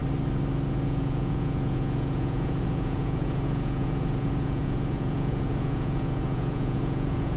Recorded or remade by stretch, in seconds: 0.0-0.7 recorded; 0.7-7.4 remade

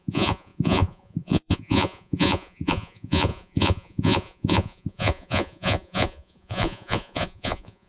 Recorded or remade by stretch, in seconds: 0.0-7.9 remade

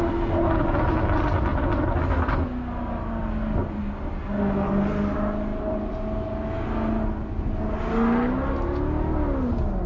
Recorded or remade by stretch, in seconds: 0.0-9.9 recorded

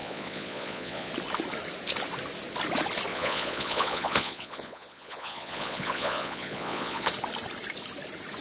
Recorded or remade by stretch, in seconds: 0.0-1.1 remade; 1.1-3.1 recorded; 3.1-7.1 remade; 7.1-8.4 recorded

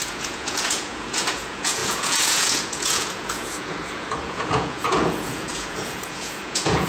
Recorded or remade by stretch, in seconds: 0.0-6.9 remade

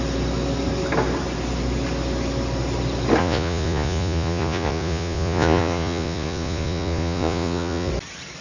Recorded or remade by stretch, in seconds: 0.0-3.2 recorded; 3.2-7.9 remade; 7.9-8.4 recorded

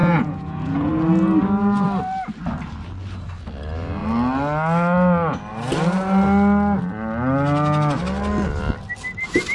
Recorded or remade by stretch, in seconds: 0.0-0.9 remade; 0.9-9.5 recorded

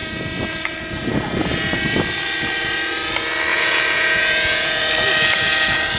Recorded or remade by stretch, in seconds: 0.0-3.5 recorded; 3.5-4.8 remade; 4.8-6.0 recorded